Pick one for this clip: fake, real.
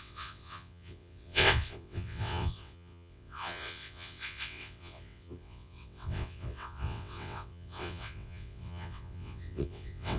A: fake